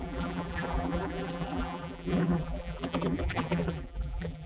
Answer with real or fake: fake